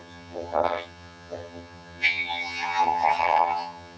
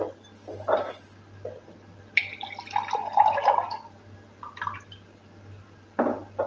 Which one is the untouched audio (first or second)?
second